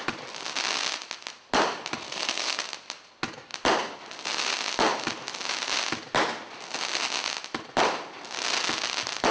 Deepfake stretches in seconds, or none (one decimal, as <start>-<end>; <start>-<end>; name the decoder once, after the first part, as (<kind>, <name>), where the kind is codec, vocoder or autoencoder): 2.0-2.6 (codec, SNAC)